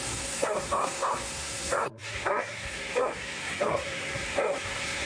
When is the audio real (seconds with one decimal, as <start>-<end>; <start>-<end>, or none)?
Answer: none